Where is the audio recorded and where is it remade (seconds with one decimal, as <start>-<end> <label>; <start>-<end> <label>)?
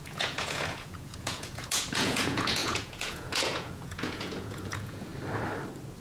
0.0-5.1 remade; 5.1-6.0 recorded